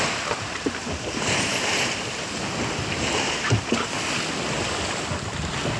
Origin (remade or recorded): recorded